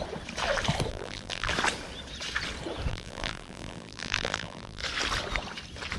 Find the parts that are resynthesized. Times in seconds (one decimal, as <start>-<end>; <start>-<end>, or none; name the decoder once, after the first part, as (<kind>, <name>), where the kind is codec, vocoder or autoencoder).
0.9-1.5 (vocoder, BigVGAN v2); 2.9-4.8